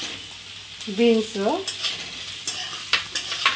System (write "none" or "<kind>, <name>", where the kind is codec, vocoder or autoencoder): none